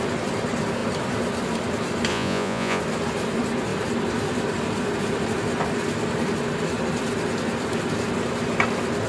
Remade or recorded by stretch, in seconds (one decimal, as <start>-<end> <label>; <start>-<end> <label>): 0.0-2.1 recorded; 2.1-2.8 remade; 2.8-9.1 recorded